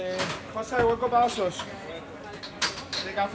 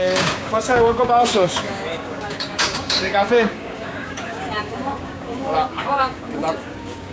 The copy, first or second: second